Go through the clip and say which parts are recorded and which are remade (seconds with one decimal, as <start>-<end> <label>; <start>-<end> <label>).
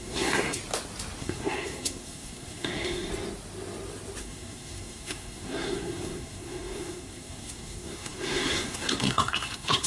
0.0-0.6 remade; 0.6-1.2 recorded; 1.2-3.1 remade; 3.1-4.2 recorded; 4.2-9.9 remade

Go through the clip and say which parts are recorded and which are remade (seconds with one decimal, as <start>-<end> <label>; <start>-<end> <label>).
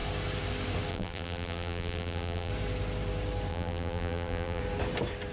0.0-0.9 recorded; 0.9-2.5 remade; 2.5-3.5 recorded; 3.5-4.6 remade; 4.6-5.3 recorded